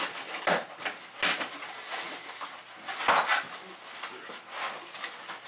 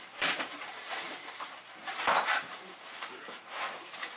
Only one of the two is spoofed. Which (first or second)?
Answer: second